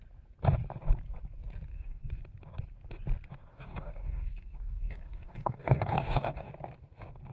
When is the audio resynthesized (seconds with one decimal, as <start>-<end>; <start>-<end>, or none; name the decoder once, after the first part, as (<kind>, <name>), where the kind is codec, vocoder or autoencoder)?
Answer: 1.7-2.2 (codec, DAC); 3.5-6.5